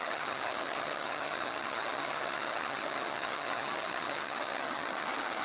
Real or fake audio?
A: fake